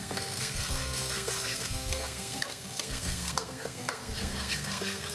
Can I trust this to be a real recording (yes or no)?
no